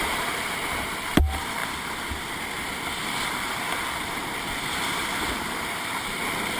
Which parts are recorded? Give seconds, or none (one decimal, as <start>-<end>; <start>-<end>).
1.6-5.4